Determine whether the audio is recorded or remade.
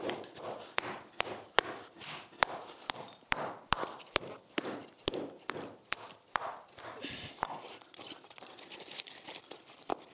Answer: recorded